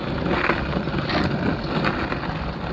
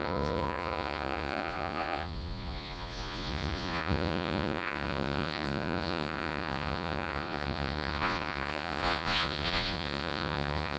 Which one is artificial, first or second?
second